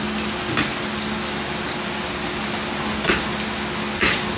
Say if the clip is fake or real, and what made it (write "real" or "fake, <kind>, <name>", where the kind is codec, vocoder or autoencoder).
real